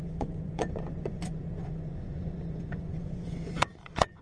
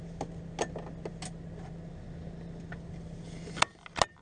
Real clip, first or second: second